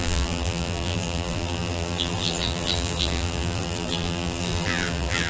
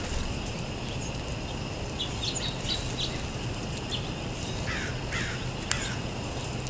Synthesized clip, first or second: first